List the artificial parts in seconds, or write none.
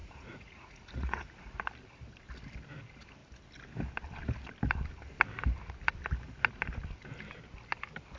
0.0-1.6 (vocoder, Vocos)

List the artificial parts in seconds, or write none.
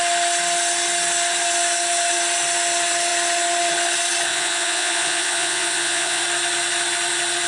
4.3-6.2 (vocoder, Vocos)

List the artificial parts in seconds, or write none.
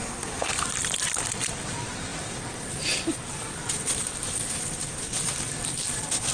0.0-0.5 (codec, SNAC)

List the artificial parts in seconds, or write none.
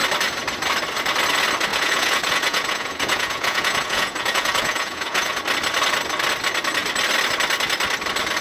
1.7-5.4 (vocoder, Vocos)